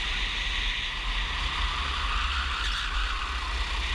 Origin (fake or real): real